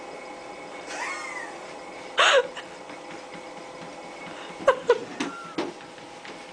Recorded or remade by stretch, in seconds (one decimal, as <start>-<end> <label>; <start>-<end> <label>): 0.0-6.5 recorded